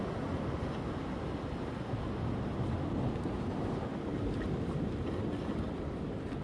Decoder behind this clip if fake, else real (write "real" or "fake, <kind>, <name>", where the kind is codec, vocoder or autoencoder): real